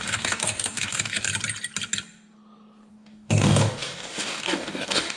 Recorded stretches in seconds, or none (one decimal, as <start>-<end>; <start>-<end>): 1.3-2.9